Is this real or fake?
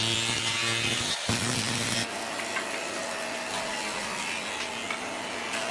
real